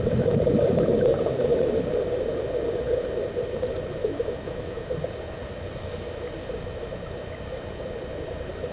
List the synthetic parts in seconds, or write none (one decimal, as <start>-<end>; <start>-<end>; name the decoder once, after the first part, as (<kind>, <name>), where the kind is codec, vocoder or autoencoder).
4.0-4.9 (autoencoder, DAC-VAE)